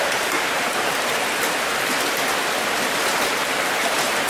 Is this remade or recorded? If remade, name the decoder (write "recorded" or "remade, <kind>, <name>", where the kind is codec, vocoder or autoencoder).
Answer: remade, vocoder, BigVGAN v2